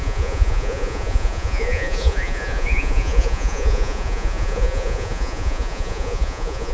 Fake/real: fake